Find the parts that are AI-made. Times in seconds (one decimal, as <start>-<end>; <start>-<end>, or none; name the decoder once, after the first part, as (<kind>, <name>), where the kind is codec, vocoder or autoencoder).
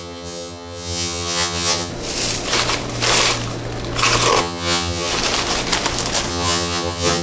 0.0-1.9 (vocoder, HiFi-GAN); 4.4-5.1; 6.3-7.2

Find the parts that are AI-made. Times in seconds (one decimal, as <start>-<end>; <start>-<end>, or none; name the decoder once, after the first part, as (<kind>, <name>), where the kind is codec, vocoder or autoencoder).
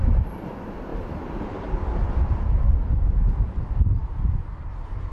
none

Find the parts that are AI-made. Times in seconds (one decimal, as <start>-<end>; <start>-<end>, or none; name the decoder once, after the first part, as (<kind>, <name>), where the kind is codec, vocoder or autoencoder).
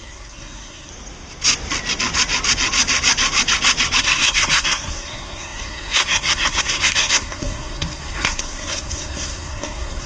0.0-0.9 (codec, SNAC); 4.0-10.1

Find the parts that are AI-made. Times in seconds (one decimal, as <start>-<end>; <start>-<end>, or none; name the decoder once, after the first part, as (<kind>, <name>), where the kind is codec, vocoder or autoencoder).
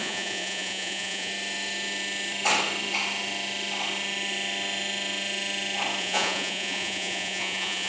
0.0-1.3 (vocoder, Vocos); 6.0-7.9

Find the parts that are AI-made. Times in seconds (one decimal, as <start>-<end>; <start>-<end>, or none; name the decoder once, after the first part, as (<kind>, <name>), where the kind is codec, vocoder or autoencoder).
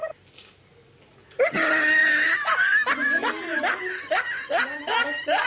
none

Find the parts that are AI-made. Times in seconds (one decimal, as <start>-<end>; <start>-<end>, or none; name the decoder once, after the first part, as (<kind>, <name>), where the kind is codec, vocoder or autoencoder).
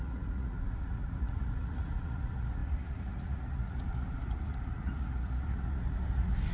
0.0-6.5 (vocoder, Vocos)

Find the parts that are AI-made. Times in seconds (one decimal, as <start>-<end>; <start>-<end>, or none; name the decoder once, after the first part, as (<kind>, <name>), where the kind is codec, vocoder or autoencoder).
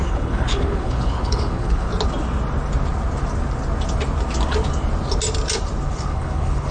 0.0-1.9 (codec, HILCodec); 5.9-6.7